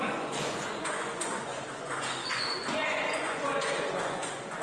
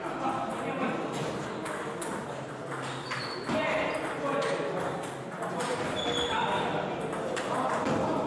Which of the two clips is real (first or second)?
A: second